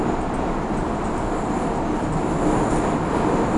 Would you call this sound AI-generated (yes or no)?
no